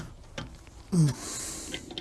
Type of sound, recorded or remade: recorded